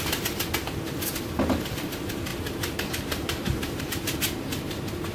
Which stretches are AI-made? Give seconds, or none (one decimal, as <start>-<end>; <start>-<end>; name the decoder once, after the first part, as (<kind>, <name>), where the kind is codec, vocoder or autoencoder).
2.3-3.8 (vocoder, BigVGAN v2)